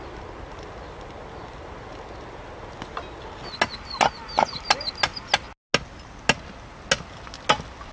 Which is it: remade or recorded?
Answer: recorded